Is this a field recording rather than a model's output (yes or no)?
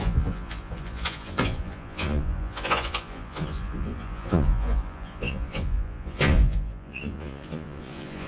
no